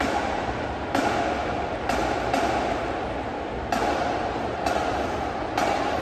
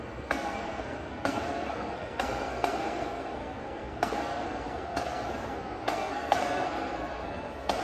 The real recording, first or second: first